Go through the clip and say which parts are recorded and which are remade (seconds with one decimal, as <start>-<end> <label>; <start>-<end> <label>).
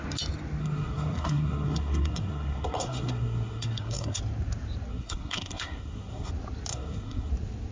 0.0-0.6 recorded; 0.6-4.2 remade; 4.2-4.9 recorded; 4.9-6.3 remade; 6.3-6.7 recorded; 6.7-7.3 remade; 7.3-7.7 recorded